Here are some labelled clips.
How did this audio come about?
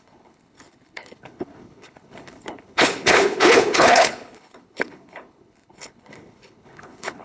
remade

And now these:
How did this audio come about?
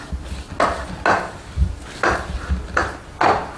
recorded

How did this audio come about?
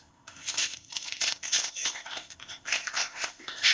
remade